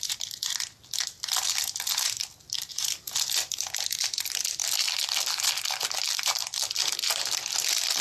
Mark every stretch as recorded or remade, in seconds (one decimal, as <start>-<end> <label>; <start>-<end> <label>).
0.0-8.0 recorded